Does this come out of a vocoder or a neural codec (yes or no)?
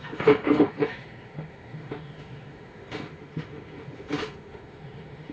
yes